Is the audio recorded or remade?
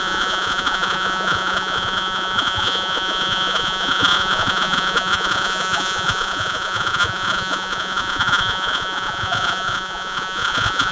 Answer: remade